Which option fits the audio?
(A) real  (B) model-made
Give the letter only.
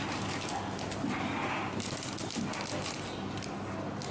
A